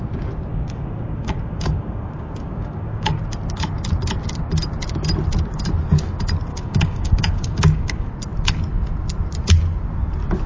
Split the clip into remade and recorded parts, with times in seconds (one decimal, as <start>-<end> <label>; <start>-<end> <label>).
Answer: 0.0-0.5 recorded; 0.5-3.2 remade; 3.2-6.5 recorded; 6.5-8.1 remade; 8.1-10.5 recorded